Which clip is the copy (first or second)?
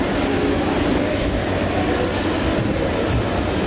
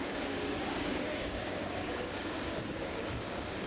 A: second